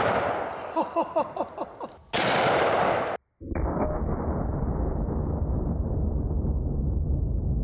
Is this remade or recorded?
recorded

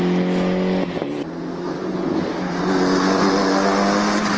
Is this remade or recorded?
recorded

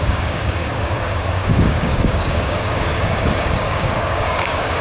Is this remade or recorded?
remade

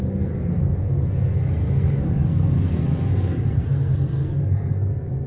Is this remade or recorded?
remade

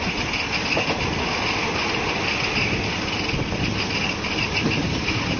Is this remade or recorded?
recorded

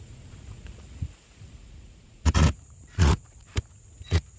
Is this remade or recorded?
remade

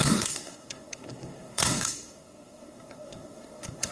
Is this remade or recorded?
remade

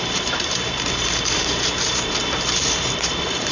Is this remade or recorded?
remade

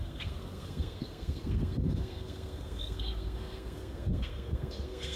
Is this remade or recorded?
remade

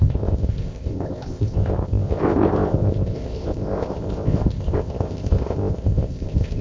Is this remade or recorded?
remade